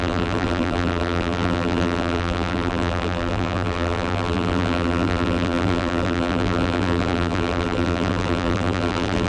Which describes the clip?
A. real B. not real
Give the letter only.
B